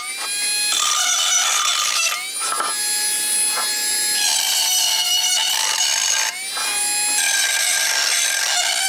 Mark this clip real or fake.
real